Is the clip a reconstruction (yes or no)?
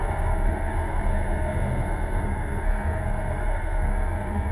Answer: yes